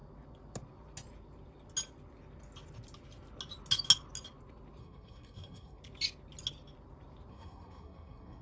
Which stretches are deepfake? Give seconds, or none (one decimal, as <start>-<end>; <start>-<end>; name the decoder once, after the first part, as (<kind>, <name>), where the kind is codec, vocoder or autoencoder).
4.8-5.8 (codec, SNAC); 7.3-8.4